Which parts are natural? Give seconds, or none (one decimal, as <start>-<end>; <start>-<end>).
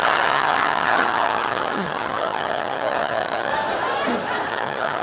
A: 3.5-4.5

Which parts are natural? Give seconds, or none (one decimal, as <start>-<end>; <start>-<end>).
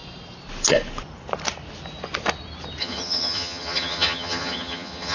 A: 0.0-2.8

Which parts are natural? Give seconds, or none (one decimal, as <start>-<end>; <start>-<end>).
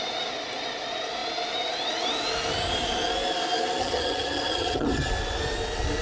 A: 0.0-3.8; 5.1-6.0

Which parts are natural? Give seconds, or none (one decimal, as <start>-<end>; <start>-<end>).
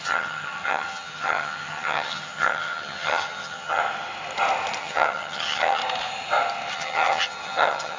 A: 3.8-4.8; 5.8-6.7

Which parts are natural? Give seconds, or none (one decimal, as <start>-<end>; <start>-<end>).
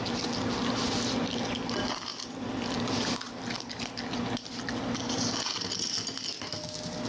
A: 0.0-7.1